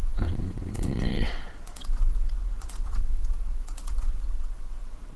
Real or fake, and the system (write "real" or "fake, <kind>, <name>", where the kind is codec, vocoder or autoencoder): fake, vocoder, WaveNeXt